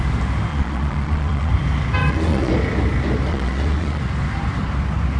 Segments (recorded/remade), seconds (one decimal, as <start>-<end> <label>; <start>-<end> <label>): 0.0-0.5 recorded; 0.5-1.5 remade; 1.5-2.0 recorded; 2.0-2.5 remade; 2.5-3.3 recorded; 3.3-4.0 remade; 4.0-5.2 recorded